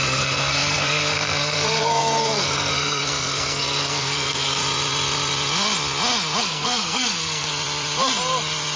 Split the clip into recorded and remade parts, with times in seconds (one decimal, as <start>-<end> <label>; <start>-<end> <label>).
0.0-4.6 remade; 4.6-6.4 recorded; 6.4-7.5 remade; 7.5-8.8 recorded